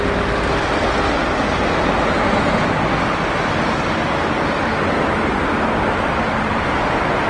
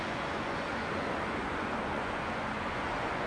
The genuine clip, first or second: first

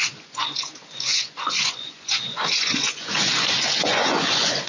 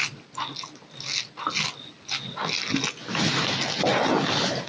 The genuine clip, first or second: second